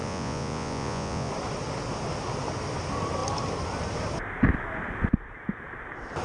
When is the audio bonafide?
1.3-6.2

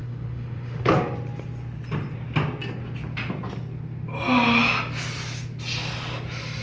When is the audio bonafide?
0.9-6.6

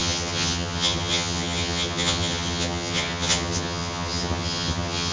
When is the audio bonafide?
none

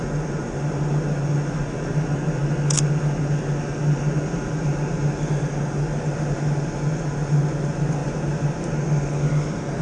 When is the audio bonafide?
0.0-9.8

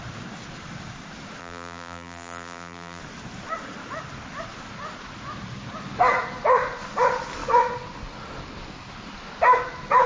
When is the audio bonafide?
0.0-1.4; 3.0-10.1

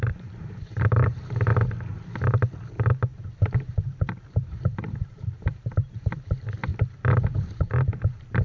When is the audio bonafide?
1.5-2.3; 6.7-7.3

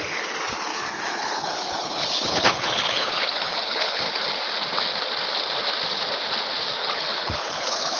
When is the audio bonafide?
0.0-0.7; 4.0-6.8

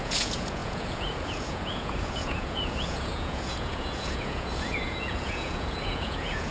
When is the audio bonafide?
none